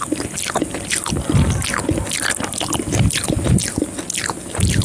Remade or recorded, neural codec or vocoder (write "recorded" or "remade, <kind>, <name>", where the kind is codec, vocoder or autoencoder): recorded